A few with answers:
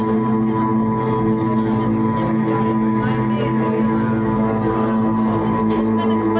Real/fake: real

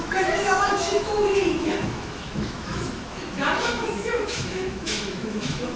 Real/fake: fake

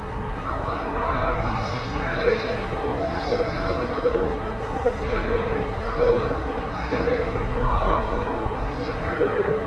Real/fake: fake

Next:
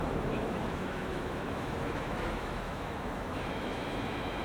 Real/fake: fake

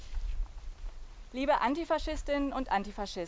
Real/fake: real